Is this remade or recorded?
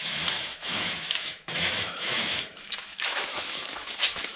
remade